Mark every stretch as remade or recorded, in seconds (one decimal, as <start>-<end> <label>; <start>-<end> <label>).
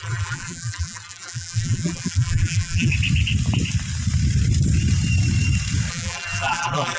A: 0.0-2.9 remade; 2.9-5.9 recorded; 5.9-7.0 remade